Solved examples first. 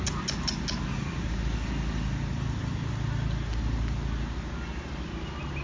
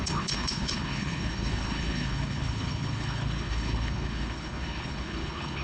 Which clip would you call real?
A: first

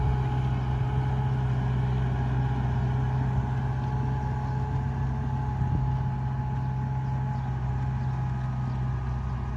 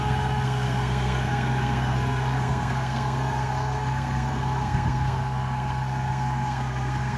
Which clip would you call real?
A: first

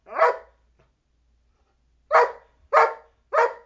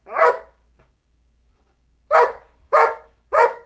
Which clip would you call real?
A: first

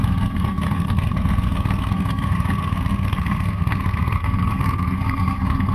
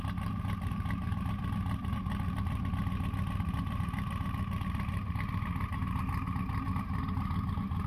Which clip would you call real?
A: second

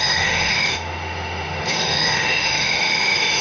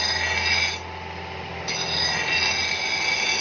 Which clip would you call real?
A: second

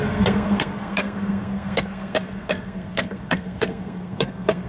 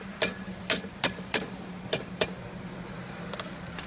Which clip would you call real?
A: second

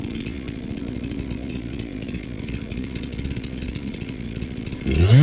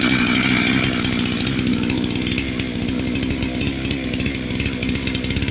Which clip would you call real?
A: second